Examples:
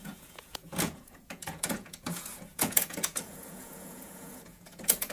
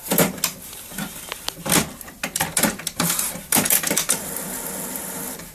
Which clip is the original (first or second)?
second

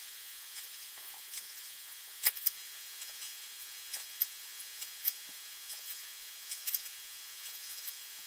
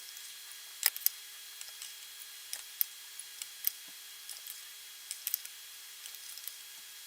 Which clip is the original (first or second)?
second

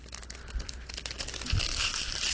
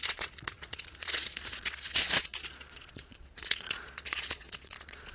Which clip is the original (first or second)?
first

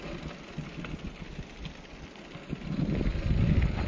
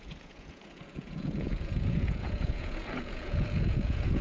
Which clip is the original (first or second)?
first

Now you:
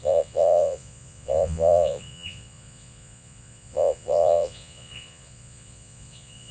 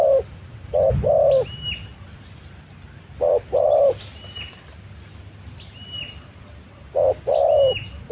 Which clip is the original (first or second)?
second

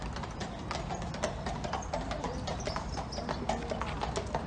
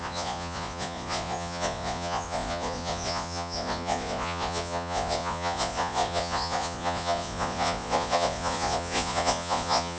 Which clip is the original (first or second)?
first